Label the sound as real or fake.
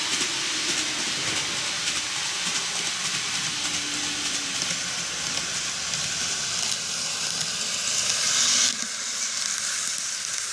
real